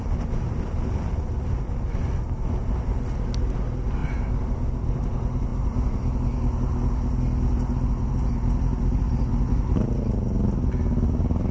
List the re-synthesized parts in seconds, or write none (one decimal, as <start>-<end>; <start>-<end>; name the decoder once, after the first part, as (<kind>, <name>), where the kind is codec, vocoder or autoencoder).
none